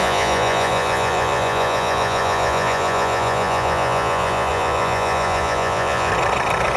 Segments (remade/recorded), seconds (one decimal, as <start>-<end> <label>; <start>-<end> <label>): 0.0-6.1 remade; 6.1-6.8 recorded